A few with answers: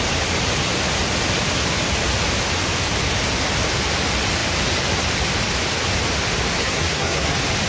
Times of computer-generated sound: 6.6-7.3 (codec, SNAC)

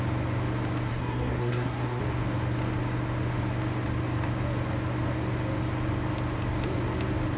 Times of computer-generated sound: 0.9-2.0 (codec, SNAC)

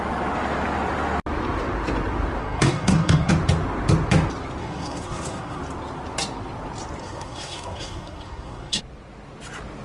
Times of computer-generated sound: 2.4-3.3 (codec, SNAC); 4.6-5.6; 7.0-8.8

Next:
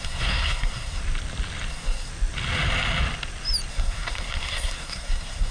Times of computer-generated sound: 0.0-1.0 (codec, SNAC); 1.7-2.1; 3.7-5.5